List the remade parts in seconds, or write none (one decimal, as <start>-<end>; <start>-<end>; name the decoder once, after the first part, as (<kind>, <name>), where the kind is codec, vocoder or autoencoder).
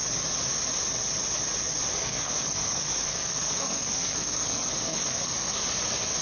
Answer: 1.9-5.6 (codec, SNAC)